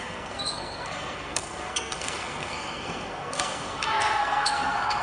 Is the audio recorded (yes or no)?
no